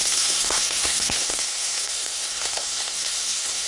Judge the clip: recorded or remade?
remade